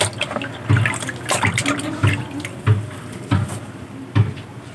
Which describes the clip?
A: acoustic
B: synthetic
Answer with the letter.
A